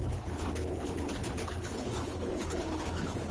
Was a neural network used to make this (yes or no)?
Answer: yes